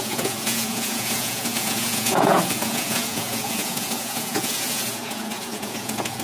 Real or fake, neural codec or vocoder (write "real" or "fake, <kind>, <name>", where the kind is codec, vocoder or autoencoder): fake, vocoder, Vocos